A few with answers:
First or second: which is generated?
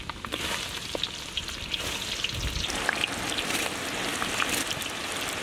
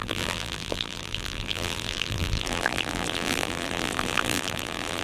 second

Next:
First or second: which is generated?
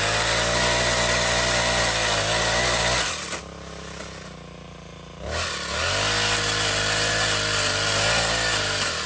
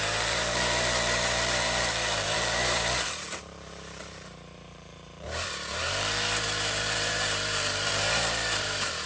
second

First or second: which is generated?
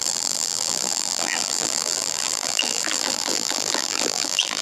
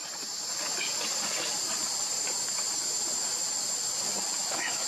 first